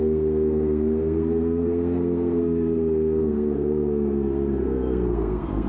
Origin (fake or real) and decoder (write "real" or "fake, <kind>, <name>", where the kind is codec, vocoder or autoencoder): fake, codec, SNAC